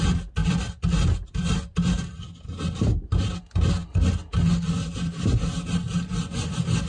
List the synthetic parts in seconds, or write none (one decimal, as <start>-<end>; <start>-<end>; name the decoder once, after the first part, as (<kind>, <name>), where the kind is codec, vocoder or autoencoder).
none